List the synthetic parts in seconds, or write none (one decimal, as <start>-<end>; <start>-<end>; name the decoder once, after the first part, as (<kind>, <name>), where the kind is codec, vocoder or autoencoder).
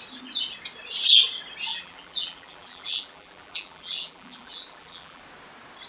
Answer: 1.7-5.2 (vocoder, BigVGAN v2)